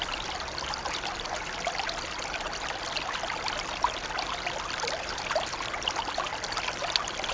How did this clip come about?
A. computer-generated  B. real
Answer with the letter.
B